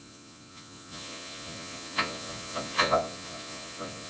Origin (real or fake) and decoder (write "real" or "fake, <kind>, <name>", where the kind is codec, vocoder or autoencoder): fake, vocoder, Vocos